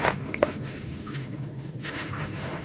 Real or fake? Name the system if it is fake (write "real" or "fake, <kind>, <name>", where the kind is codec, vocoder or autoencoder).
fake, autoencoder, DAC-VAE